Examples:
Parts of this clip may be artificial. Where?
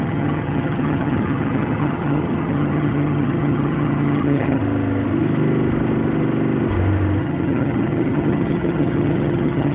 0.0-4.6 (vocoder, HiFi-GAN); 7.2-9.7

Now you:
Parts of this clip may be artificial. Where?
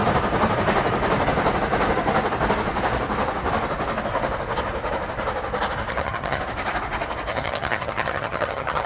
5.9-6.4 (vocoder, HiFi-GAN); 7.3-8.9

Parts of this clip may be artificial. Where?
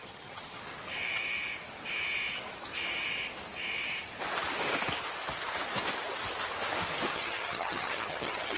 0.0-0.6 (vocoder, HiFi-GAN); 7.1-8.6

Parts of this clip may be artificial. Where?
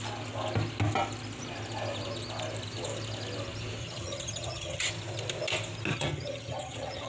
3.8-4.9 (vocoder, HiFi-GAN); 5.9-7.1